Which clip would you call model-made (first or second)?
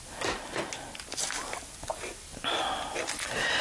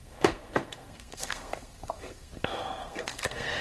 second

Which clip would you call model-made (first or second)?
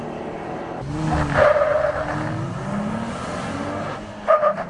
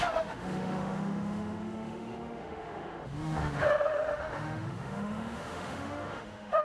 second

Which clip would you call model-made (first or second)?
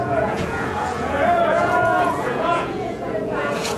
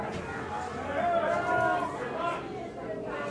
first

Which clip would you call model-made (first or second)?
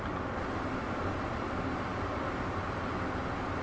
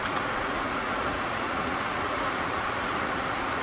second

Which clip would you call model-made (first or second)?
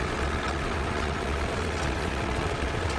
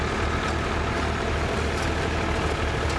first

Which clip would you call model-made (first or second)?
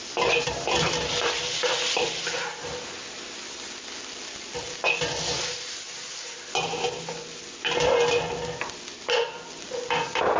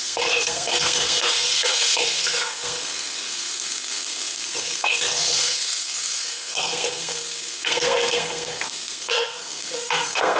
second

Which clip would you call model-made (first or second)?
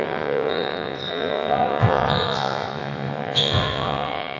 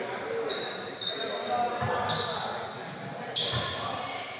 first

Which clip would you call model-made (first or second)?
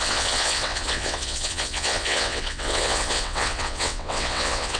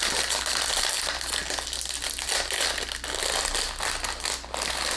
first